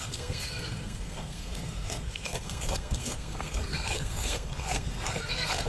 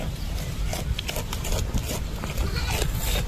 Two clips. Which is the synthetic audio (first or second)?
first